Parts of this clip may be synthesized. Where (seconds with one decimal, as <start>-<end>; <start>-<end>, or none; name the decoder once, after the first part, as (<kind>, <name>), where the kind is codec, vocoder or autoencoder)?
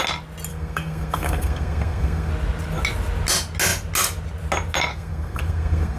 0.5-2.3 (codec, SNAC); 4.9-6.0